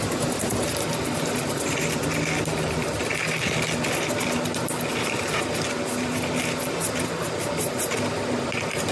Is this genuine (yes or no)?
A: yes